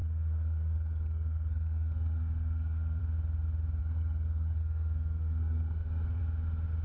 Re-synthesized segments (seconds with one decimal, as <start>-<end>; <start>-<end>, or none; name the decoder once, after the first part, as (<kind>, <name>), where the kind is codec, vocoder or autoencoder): 0.0-3.0 (codec, SNAC); 3.8-6.2